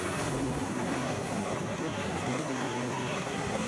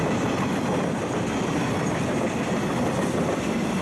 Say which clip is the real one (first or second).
second